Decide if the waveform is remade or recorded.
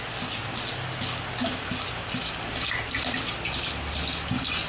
recorded